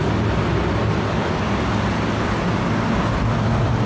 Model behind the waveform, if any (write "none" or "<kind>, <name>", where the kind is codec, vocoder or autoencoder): none